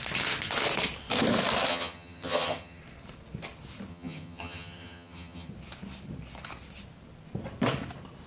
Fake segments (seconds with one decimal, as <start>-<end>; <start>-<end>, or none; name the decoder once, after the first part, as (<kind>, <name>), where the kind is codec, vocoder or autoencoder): 1.7-2.8 (vocoder, HiFi-GAN); 3.9-5.5